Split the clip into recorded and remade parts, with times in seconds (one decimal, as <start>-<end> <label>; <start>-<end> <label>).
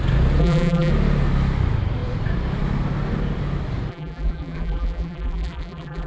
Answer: 0.0-0.4 recorded; 0.4-0.9 remade; 0.9-3.9 recorded; 3.9-6.1 remade